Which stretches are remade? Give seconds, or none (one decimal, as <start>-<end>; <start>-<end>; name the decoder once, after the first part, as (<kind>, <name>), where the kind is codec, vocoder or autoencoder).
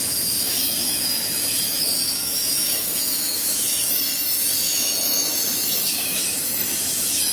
0.0-7.3 (autoencoder, DAC-VAE)